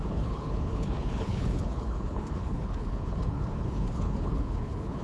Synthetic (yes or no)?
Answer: yes